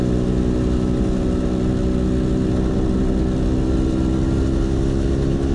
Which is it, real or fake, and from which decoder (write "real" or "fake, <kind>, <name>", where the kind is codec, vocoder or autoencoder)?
real